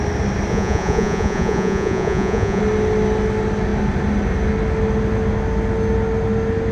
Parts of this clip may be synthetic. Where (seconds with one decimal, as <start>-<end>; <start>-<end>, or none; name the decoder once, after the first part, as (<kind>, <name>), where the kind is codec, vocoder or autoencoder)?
0.5-2.6 (vocoder, Vocos)